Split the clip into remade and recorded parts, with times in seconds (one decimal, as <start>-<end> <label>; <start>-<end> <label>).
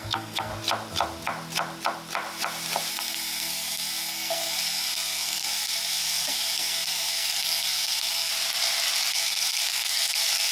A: 0.0-0.5 remade; 0.5-2.9 recorded; 2.9-8.3 remade; 8.3-9.1 recorded; 9.1-10.5 remade